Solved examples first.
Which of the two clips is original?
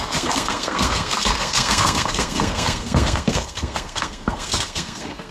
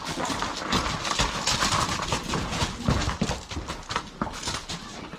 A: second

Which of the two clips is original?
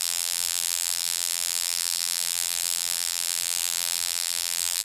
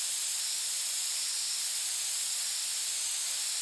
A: second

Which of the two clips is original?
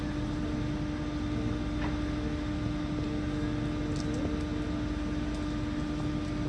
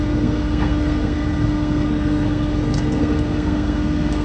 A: first